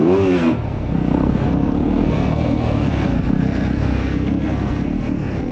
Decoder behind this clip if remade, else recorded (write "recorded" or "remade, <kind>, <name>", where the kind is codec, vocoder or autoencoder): remade, codec, SNAC